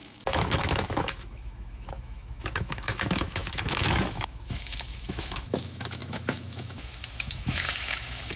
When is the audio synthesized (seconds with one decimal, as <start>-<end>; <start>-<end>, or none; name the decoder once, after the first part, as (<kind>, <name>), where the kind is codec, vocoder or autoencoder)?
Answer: 0.0-8.4 (autoencoder, DAC-VAE)